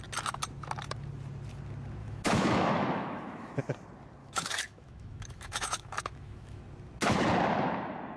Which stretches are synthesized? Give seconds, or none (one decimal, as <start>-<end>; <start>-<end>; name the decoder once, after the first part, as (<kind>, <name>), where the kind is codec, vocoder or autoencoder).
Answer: 2.0-3.6 (autoencoder, DAC-VAE); 4.2-6.6